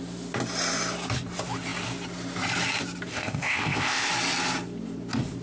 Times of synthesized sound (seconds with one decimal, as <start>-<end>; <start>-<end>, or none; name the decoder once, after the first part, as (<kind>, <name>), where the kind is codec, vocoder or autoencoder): 3.1-4.1 (codec, ZipCodec)